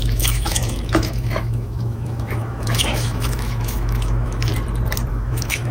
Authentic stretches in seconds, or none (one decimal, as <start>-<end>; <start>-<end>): 4.5-5.1